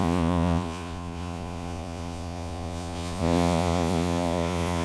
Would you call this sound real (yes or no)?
no